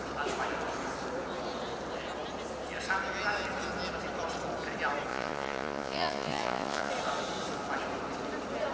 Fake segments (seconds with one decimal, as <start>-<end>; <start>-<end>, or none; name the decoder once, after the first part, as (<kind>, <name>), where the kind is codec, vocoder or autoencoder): 5.1-6.9 (vocoder, Vocos)